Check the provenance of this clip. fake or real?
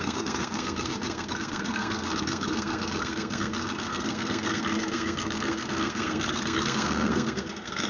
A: fake